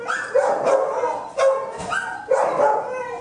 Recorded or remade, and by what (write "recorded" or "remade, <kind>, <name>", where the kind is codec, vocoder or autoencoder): recorded